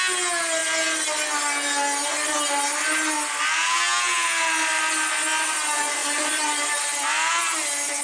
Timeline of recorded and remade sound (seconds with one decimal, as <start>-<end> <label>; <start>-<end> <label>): 0.0-8.0 recorded